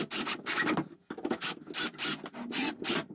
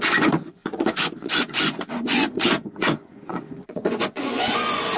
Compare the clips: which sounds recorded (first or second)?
first